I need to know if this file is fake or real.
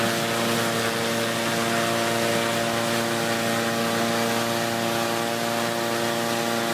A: real